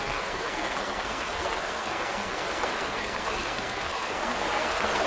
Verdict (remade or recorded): remade